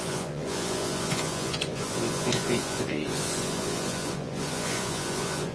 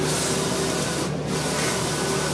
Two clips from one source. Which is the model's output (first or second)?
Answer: first